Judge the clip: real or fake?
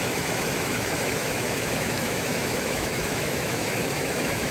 fake